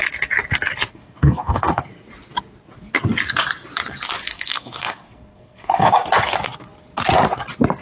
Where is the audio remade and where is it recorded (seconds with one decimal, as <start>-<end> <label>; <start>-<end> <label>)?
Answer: 0.0-0.9 recorded; 0.9-1.9 remade; 1.9-4.3 recorded; 4.3-6.1 remade; 6.1-7.8 recorded